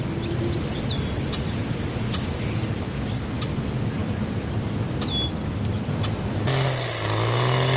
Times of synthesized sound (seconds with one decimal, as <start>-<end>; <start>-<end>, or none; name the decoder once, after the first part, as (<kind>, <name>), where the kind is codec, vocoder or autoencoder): none